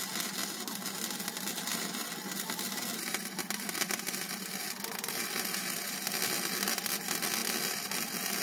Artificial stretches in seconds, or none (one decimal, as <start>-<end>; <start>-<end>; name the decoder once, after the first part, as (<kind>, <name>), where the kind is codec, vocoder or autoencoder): 1.7-4.8 (vocoder, BigVGAN v2)